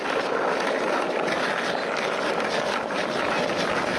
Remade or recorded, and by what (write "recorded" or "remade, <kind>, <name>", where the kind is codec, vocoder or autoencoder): recorded